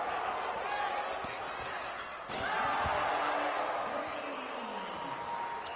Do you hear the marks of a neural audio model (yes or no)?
no